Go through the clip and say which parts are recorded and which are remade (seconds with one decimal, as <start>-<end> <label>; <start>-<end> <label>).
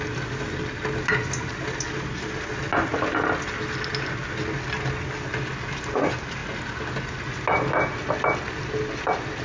0.0-9.4 recorded